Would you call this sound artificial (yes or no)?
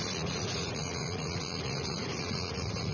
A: yes